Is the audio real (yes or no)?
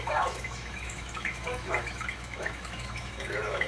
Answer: no